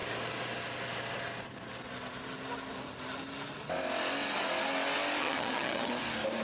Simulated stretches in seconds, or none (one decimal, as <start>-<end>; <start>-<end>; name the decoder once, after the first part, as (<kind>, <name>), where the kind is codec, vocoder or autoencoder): 5.2-5.9 (vocoder, HiFi-GAN)

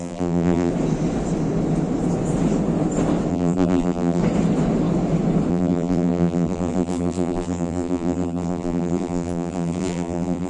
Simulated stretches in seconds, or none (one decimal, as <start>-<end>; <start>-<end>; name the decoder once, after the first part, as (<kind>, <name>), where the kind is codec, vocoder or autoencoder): 0.0-0.7 (vocoder, BigVGAN v2); 3.3-4.2; 5.5-10.5

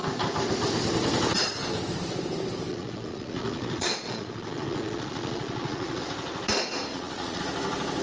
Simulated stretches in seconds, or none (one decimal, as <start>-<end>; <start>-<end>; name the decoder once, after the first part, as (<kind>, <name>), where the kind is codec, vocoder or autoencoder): 2.7-6.0 (vocoder, Vocos); 6.9-7.4

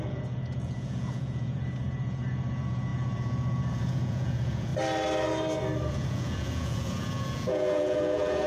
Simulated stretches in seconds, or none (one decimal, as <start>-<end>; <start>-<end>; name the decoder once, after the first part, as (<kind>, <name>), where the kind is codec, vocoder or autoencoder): 0.0-4.7 (vocoder, Vocos); 5.9-8.5